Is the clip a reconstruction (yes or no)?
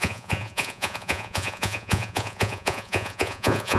yes